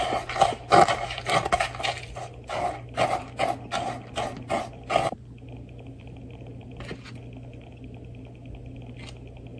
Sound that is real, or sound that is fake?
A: real